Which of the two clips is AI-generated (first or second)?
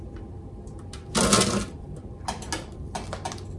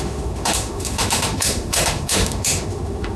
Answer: second